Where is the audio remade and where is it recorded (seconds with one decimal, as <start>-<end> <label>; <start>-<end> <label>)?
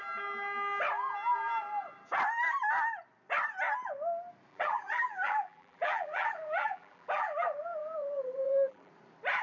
0.0-4.5 recorded; 4.5-8.9 remade; 8.9-9.4 recorded